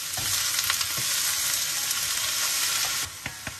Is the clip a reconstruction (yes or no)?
no